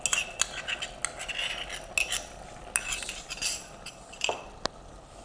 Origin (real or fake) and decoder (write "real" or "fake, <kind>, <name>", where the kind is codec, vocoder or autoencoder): real